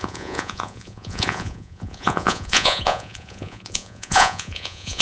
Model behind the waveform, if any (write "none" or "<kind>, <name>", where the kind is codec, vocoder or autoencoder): vocoder, Vocos